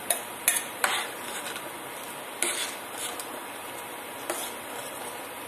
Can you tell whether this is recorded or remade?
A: recorded